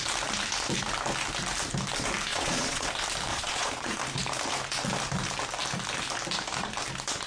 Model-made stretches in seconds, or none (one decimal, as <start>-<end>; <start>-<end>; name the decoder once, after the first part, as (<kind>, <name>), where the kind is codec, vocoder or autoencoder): 2.3-2.9 (vocoder, Vocos); 3.3-4.0